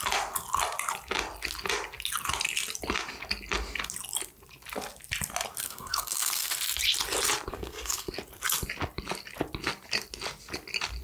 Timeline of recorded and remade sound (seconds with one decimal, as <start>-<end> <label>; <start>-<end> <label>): 0.0-5.6 recorded; 5.6-6.5 remade; 6.5-7.5 recorded; 7.5-8.2 remade; 8.2-11.0 recorded